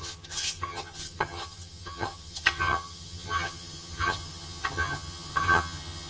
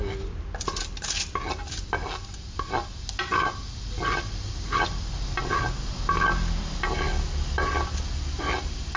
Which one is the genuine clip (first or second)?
second